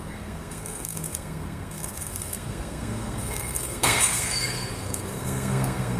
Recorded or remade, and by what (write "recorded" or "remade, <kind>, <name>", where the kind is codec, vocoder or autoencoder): remade, codec, SNAC